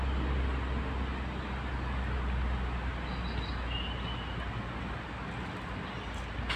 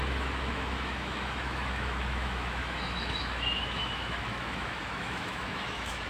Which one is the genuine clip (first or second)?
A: first